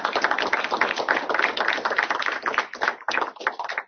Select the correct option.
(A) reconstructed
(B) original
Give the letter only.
B